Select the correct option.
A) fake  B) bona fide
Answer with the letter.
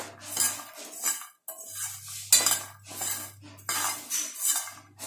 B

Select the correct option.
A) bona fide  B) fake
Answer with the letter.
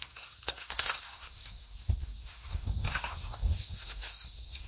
B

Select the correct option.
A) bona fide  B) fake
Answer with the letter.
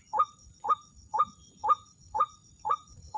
B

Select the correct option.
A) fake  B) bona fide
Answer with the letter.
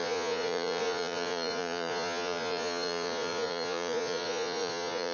A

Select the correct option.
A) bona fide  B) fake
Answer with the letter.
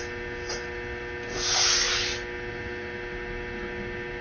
A